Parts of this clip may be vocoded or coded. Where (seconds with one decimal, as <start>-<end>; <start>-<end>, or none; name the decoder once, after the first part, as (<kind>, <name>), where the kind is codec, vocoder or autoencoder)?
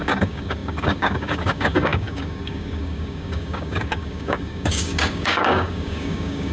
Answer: 0.0-6.5 (codec, DAC)